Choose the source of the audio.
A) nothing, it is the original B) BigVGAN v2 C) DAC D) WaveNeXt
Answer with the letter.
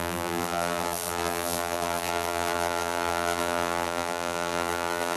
B